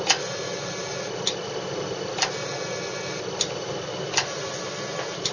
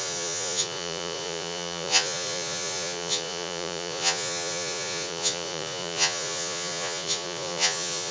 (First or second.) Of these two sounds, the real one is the first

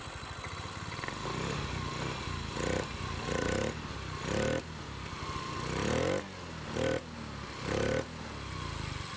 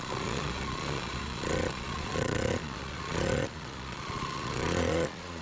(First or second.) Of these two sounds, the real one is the first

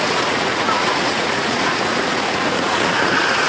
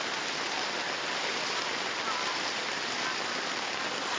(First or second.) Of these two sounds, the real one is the second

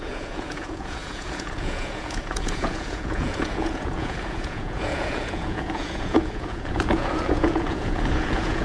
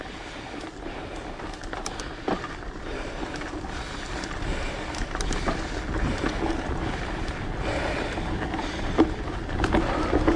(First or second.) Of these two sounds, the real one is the second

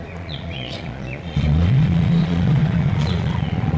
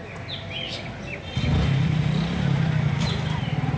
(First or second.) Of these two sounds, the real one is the second